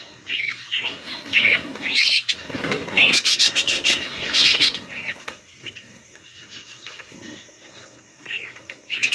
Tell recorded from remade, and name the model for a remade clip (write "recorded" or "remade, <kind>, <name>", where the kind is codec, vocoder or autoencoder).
remade, codec, SNAC